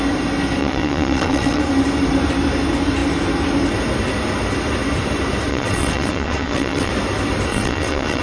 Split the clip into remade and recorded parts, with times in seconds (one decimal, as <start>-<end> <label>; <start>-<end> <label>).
0.0-0.6 recorded; 0.6-1.6 remade; 1.6-5.5 recorded; 5.5-6.9 remade; 6.9-7.5 recorded; 7.5-8.2 remade